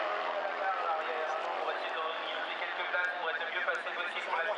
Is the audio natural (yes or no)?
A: yes